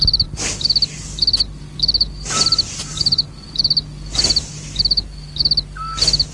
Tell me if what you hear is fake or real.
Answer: real